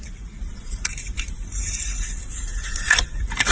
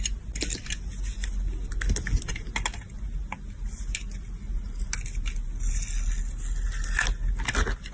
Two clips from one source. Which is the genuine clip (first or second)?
second